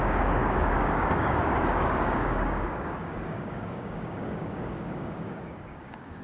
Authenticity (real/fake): fake